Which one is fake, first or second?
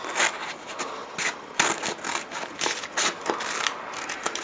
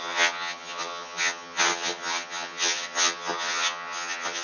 second